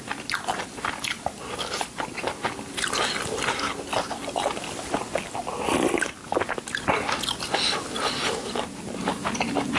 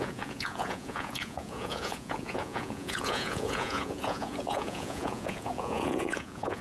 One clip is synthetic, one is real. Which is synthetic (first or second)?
second